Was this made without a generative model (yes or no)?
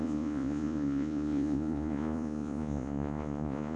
no